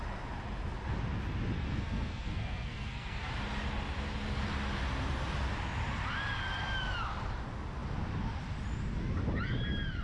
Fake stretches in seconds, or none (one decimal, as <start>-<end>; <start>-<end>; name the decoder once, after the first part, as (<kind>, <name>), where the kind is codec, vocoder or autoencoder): 1.6-3.3 (codec, SNAC)